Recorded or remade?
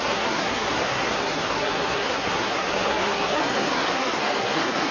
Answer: remade